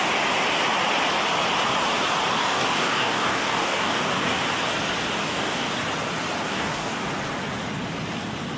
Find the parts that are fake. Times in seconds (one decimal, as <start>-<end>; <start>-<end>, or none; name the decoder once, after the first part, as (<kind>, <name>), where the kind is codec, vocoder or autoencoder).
2.4-4.4 (codec, DAC); 5.2-5.7; 6.5-7.1